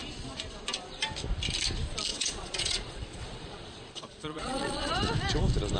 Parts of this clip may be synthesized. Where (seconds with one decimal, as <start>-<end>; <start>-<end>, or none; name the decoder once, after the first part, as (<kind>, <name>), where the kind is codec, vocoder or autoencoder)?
2.1-4.9 (vocoder, Vocos)